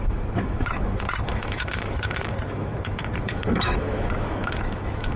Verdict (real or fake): fake